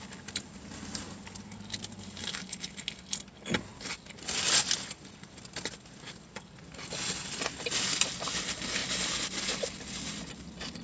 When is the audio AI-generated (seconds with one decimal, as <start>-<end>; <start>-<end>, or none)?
none